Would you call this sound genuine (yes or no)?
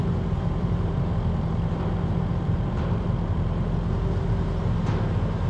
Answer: no